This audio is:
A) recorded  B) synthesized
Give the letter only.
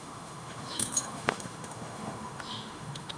B